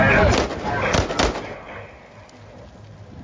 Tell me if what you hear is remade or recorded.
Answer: recorded